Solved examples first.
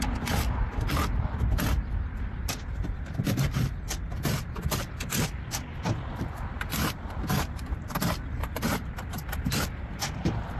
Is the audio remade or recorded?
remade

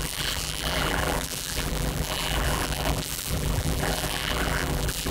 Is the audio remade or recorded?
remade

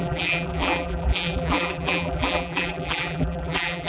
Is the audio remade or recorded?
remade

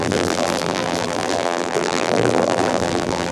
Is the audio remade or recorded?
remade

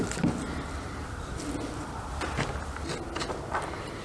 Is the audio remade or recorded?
recorded